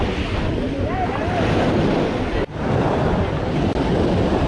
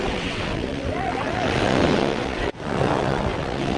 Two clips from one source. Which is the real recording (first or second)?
first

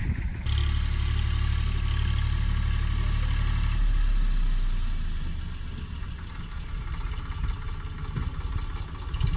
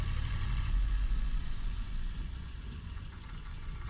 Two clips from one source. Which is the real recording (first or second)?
first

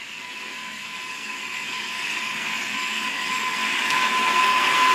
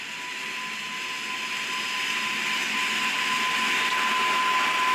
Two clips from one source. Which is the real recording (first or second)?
second